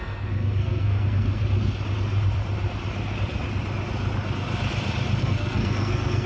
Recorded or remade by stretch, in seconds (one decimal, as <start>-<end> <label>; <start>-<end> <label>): 0.0-1.4 remade; 1.4-5.2 recorded; 5.2-6.3 remade